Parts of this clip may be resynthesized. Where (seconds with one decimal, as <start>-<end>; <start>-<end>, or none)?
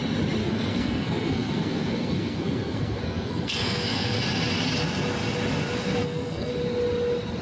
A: 0.4-4.2; 6.0-6.5